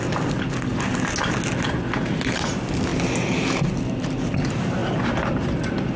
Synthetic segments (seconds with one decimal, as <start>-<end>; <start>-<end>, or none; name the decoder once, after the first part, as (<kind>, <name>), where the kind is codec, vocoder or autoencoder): none